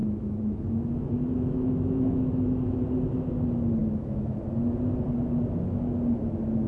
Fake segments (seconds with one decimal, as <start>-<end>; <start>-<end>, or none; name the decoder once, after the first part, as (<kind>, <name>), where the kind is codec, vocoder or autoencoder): 0.0-0.6 (autoencoder, DAC-VAE); 1.3-2.8; 3.8-4.4